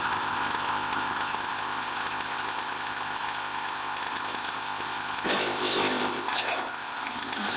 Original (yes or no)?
no